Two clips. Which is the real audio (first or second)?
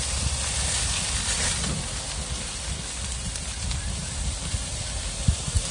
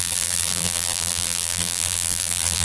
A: first